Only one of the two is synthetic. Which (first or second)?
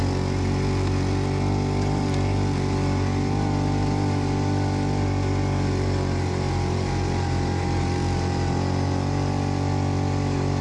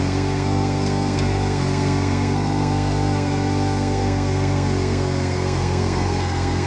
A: second